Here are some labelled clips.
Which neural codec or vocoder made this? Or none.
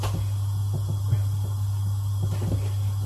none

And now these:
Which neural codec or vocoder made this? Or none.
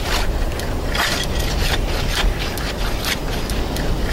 none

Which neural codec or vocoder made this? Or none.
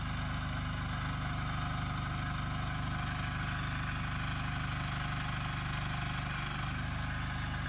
none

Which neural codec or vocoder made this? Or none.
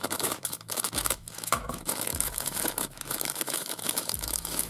autoencoder, DAC-VAE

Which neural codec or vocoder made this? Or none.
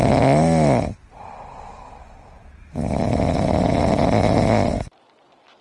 none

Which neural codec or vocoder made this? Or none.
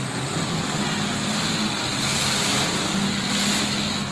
none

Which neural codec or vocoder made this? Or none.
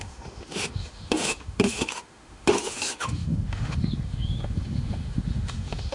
autoencoder, DAC-VAE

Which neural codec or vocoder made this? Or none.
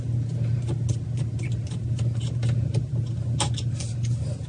none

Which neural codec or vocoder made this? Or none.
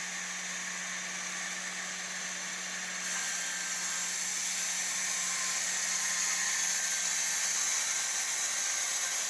none